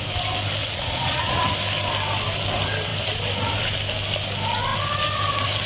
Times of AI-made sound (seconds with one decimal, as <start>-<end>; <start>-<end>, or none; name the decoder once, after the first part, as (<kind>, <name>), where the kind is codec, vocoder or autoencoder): 0.6-1.4 (vocoder, Vocos)